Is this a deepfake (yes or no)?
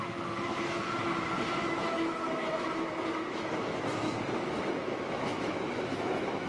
yes